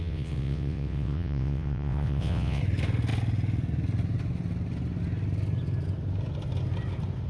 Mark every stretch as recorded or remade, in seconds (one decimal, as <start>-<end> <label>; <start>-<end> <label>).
0.0-2.6 remade; 2.6-7.3 recorded